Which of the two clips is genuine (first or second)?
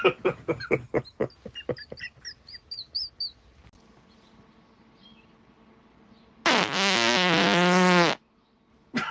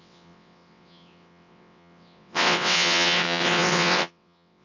first